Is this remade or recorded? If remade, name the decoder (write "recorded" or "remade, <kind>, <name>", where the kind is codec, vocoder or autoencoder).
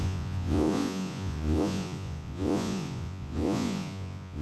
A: remade, vocoder, Vocos